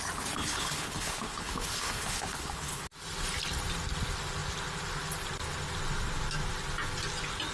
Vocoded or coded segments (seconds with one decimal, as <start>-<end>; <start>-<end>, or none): 0.4-2.8